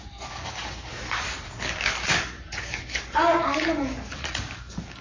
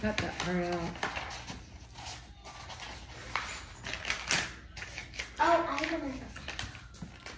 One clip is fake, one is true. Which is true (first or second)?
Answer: second